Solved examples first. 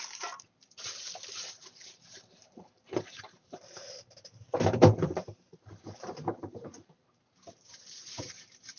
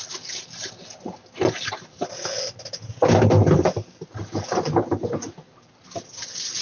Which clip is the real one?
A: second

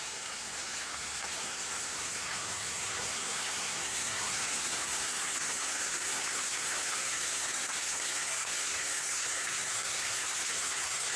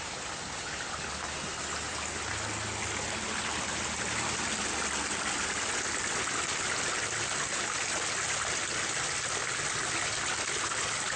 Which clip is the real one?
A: second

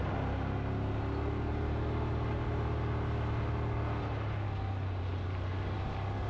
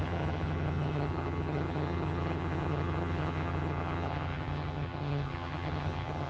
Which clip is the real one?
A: first